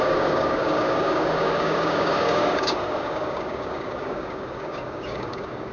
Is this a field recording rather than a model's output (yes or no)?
no